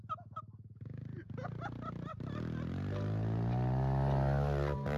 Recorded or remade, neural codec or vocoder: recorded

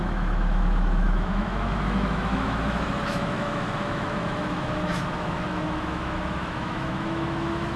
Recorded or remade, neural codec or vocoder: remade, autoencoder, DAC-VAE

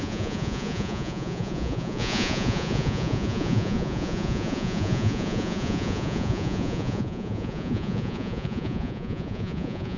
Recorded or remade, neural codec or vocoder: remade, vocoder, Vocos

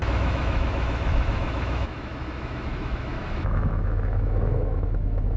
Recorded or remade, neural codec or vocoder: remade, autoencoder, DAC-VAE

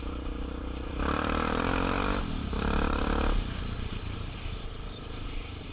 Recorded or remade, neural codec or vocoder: remade, vocoder, BigVGAN v2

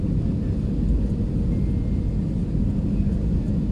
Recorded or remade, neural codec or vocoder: recorded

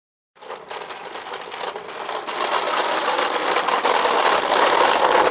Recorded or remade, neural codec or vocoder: recorded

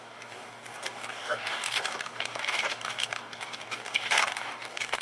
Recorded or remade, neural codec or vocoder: remade, codec, DAC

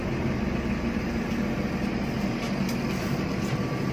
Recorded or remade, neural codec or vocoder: recorded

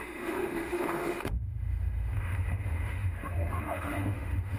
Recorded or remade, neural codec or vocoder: remade, autoencoder, DAC-VAE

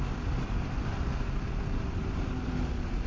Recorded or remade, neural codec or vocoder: recorded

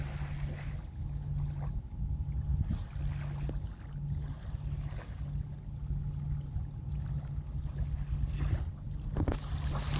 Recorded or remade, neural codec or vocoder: recorded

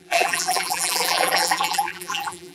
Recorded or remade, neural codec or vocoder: remade, vocoder, BigVGAN v2